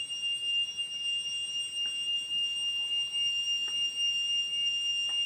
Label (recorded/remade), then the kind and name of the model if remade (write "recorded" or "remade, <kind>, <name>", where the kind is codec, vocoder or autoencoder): recorded